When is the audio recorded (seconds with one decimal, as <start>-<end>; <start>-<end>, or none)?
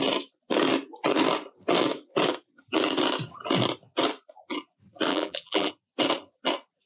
0.0-5.1; 5.7-6.9